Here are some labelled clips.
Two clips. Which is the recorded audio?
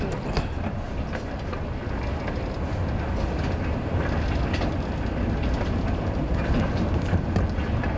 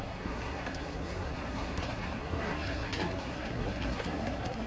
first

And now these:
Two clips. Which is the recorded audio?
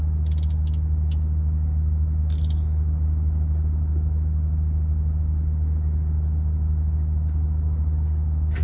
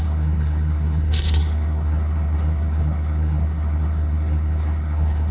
first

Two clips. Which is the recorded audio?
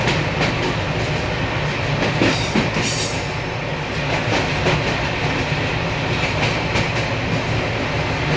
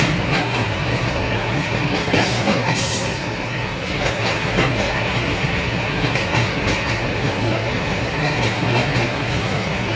first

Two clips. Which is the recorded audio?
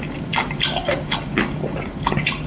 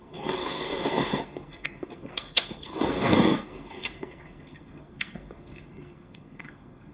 first